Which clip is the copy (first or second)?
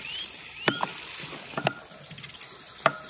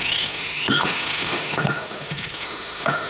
second